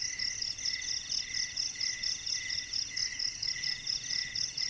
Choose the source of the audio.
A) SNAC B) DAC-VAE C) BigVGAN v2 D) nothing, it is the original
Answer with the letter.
D